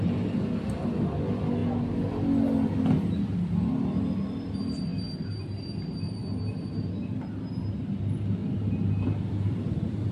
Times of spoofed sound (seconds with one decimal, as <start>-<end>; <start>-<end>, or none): 6.2-6.9; 8.4-10.1